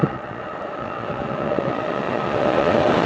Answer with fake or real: fake